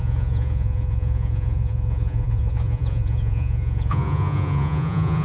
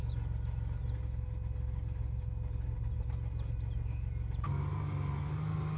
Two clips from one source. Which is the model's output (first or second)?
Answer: first